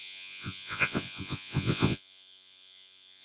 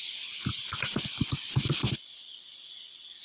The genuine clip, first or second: second